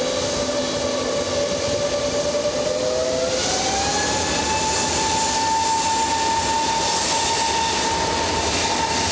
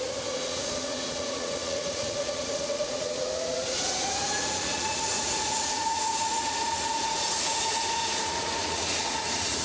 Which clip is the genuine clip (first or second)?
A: first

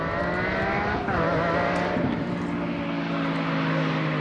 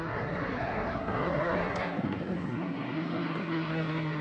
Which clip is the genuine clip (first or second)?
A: first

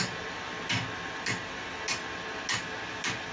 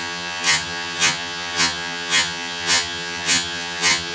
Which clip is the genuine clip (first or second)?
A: first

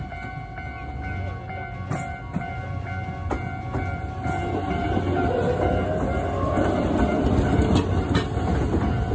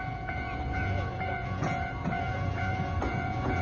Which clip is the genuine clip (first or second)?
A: first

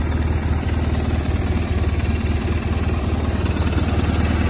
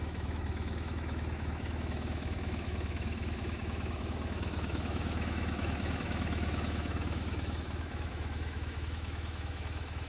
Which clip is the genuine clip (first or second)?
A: first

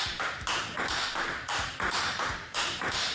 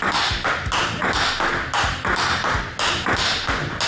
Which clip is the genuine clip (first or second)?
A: second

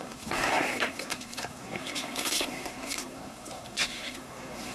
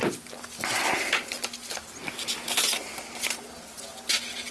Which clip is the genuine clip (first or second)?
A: second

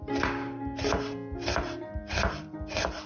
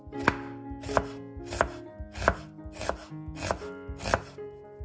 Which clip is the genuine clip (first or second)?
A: second